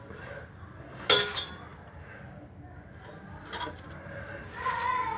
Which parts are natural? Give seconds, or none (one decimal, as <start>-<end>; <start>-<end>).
0.0-5.2